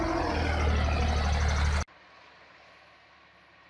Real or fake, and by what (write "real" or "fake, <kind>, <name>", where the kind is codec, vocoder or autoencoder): real